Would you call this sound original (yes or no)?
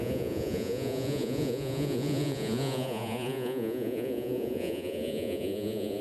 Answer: no